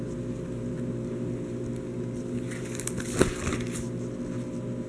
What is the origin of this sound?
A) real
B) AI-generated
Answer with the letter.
A